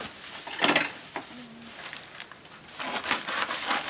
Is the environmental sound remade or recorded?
recorded